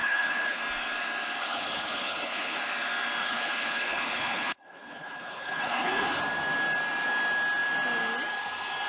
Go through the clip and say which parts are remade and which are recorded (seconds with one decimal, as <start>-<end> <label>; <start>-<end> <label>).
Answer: 0.0-0.6 remade; 0.6-1.4 recorded; 1.4-2.6 remade; 2.6-3.2 recorded; 3.2-6.2 remade; 6.2-8.9 recorded

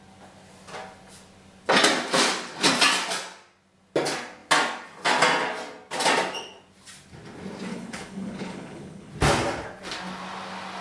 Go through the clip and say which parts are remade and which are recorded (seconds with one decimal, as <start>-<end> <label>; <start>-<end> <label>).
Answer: 0.0-7.7 recorded; 7.7-9.1 remade; 9.1-10.8 recorded

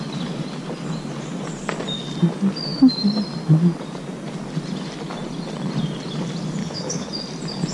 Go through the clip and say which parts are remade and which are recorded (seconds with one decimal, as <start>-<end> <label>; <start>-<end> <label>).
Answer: 0.0-6.6 recorded; 6.6-7.1 remade; 7.1-7.7 recorded